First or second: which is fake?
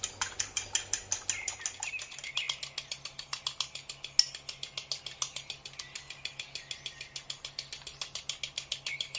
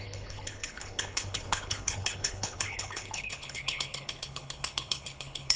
second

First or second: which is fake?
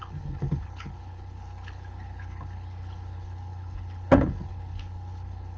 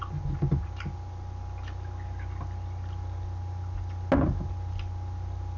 first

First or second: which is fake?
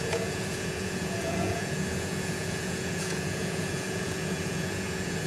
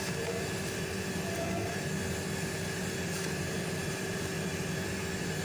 first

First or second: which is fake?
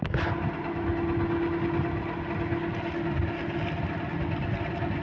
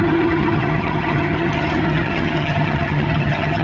second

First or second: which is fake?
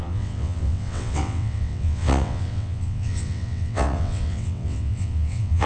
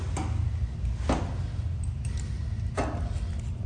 first